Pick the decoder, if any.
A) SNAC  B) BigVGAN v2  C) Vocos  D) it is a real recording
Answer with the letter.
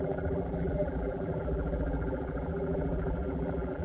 B